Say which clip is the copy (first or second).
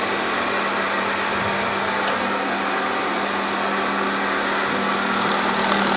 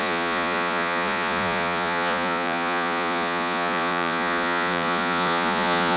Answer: second